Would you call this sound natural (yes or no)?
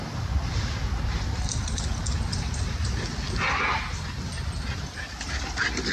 yes